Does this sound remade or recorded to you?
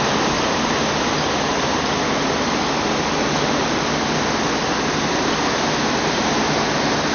recorded